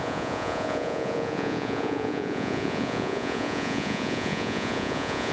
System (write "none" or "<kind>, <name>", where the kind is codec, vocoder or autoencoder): vocoder, Vocos